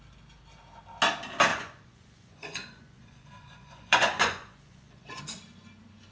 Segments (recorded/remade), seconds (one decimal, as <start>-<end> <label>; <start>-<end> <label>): 0.0-1.5 recorded; 1.5-5.2 remade; 5.2-6.1 recorded